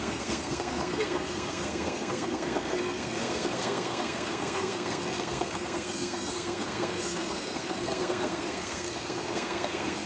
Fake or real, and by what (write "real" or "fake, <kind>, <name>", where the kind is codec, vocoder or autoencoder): fake, codec, SNAC